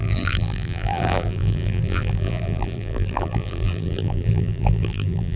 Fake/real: fake